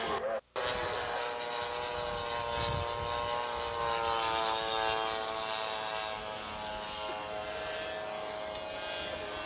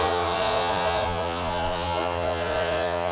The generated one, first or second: second